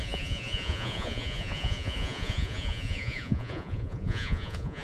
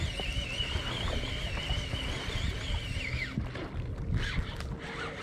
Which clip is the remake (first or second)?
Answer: first